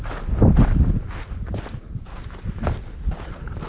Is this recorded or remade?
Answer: recorded